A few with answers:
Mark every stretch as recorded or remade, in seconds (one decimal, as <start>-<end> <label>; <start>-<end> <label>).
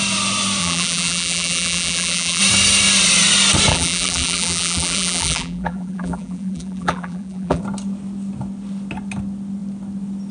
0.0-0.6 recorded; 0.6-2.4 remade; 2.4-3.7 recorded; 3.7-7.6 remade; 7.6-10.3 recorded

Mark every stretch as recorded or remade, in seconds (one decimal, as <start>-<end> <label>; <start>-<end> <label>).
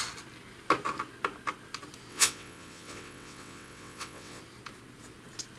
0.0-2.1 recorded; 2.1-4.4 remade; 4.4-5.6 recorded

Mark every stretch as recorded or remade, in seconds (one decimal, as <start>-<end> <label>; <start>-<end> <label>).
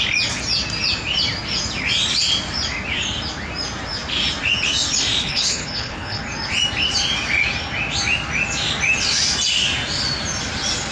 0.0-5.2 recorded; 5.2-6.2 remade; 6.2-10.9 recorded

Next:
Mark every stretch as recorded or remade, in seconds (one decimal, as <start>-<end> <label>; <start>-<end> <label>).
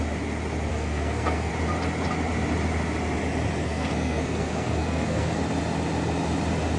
0.0-0.7 recorded; 0.7-1.5 remade; 1.5-3.6 recorded; 3.6-5.4 remade; 5.4-6.8 recorded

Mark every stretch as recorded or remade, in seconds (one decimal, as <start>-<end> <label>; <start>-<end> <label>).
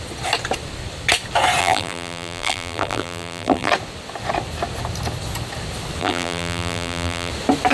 0.0-1.6 recorded; 1.6-3.7 remade; 3.7-6.0 recorded; 6.0-7.3 remade; 7.3-7.7 recorded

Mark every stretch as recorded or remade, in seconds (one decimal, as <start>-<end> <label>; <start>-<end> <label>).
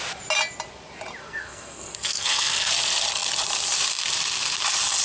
0.0-1.2 recorded; 1.2-2.7 remade; 2.7-5.0 recorded